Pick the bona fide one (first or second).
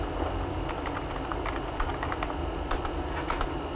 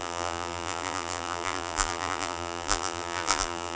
first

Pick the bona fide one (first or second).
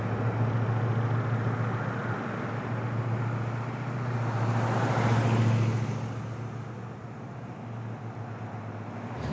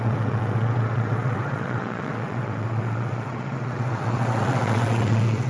first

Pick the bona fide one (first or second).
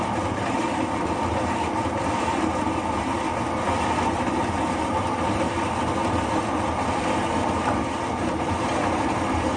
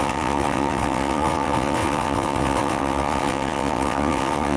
first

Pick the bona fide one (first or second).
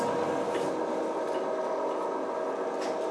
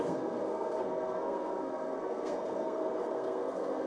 first